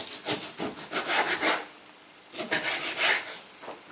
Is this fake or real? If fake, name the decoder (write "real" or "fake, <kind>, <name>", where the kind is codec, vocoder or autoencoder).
real